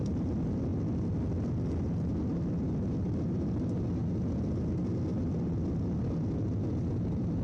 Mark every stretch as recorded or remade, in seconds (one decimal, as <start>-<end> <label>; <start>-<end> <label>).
0.0-7.4 recorded